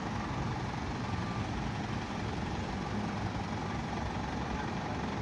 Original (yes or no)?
no